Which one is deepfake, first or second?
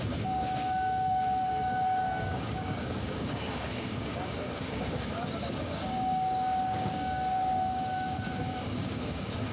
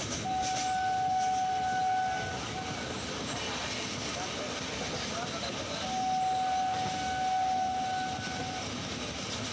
first